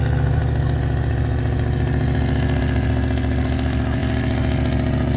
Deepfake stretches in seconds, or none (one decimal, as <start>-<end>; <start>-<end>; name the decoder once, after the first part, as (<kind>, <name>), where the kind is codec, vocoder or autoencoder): none